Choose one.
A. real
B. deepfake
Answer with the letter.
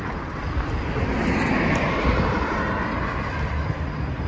A